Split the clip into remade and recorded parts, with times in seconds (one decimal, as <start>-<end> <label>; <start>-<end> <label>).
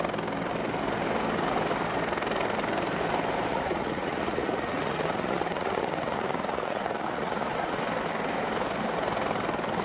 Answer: 0.0-3.5 recorded; 3.5-7.8 remade; 7.8-9.8 recorded